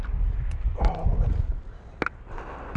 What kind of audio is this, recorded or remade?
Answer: recorded